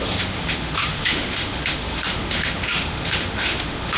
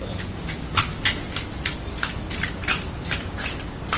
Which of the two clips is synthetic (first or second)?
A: first